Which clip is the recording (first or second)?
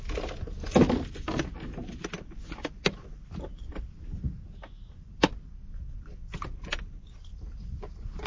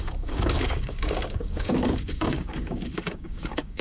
first